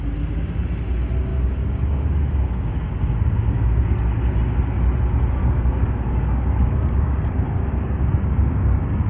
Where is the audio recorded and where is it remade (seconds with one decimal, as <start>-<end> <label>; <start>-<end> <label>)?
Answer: 0.0-1.3 recorded; 1.3-4.3 remade; 4.3-5.4 recorded; 5.4-9.1 remade